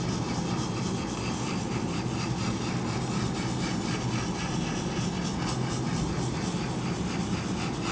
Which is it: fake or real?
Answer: real